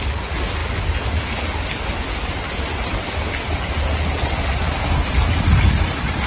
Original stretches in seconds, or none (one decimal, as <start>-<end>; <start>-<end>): 0.0-6.3